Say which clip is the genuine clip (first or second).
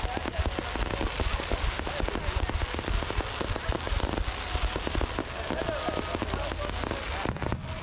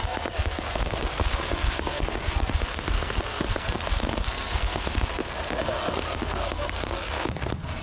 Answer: first